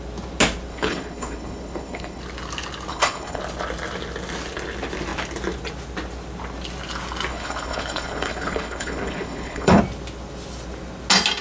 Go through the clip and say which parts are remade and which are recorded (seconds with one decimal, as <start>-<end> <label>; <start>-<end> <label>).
0.0-0.7 recorded; 0.7-2.2 remade; 2.2-2.9 recorded; 2.9-3.4 remade; 3.4-7.3 recorded; 7.3-9.8 remade; 9.8-11.4 recorded